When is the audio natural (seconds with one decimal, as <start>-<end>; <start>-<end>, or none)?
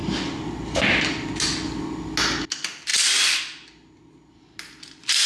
0.0-5.3